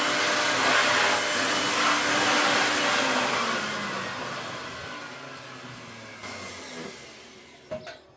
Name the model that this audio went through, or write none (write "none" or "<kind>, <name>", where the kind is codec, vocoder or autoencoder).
none